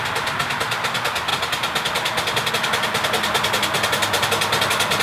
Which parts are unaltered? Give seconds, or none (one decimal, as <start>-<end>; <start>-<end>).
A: 0.0-1.3; 2.5-5.0